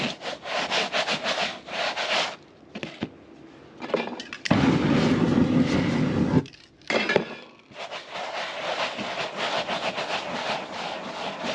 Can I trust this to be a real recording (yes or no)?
yes